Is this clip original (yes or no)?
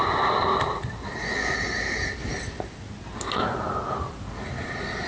yes